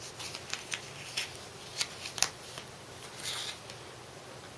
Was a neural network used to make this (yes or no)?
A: no